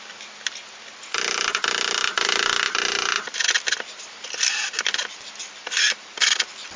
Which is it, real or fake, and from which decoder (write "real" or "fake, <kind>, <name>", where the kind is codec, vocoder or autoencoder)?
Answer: real